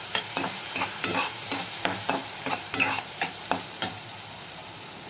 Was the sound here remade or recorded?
remade